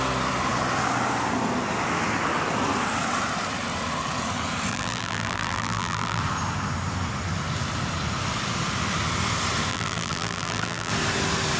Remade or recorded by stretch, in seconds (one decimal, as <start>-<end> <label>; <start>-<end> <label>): 0.0-4.7 recorded; 4.7-6.2 remade; 6.2-9.7 recorded; 9.7-10.9 remade; 10.9-11.6 recorded